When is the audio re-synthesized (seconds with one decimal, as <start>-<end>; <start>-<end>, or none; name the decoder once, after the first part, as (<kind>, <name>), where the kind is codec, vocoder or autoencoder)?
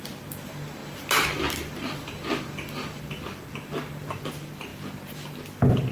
none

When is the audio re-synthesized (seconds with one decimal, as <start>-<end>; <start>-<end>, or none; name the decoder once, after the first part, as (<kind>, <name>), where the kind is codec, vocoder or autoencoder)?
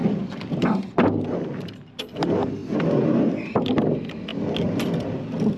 none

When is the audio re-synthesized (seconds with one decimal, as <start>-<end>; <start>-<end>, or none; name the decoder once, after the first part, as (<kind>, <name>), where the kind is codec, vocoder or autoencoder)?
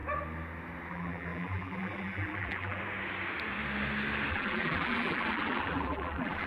0.9-2.8 (vocoder, BigVGAN v2); 4.3-6.5